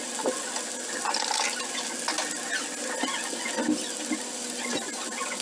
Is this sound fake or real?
real